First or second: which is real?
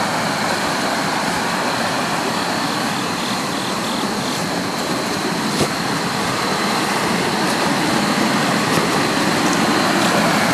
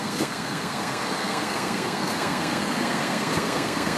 first